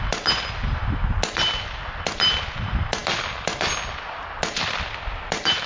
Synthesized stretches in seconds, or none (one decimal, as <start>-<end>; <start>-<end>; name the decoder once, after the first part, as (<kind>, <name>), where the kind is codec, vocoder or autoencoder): none